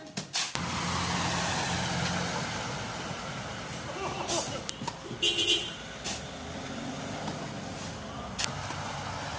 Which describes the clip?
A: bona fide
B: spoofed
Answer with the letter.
A